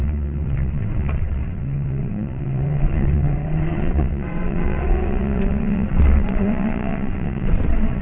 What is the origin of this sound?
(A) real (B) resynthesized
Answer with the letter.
B